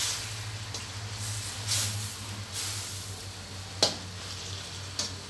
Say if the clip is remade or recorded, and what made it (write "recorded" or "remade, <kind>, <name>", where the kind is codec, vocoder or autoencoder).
recorded